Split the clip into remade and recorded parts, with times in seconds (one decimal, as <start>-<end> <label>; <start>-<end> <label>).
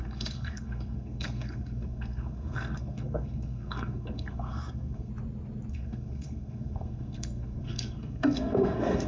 0.0-5.1 remade; 5.1-5.7 recorded; 5.7-9.1 remade